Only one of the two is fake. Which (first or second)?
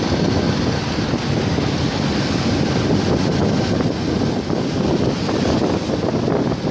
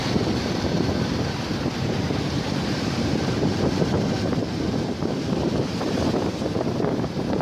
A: second